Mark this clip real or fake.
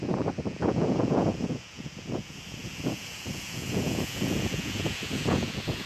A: fake